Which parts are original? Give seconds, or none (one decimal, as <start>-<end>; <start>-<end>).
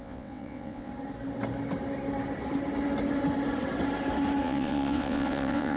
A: 0.9-4.4